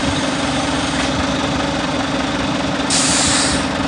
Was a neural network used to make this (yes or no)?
no